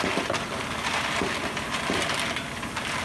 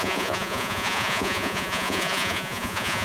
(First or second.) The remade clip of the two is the second